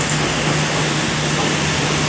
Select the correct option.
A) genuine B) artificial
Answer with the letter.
A